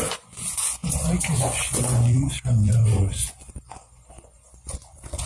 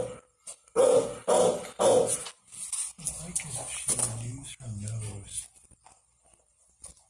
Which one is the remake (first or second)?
first